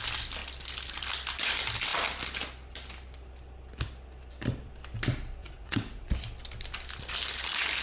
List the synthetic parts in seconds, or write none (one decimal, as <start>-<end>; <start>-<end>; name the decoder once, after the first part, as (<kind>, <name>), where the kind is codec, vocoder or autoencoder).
5.4-6.1 (vocoder, WaveNeXt)